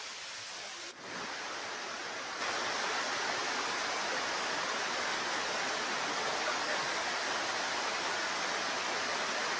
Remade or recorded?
recorded